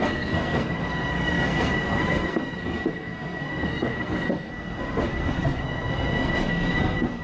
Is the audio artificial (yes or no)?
yes